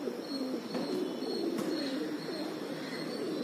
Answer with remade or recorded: recorded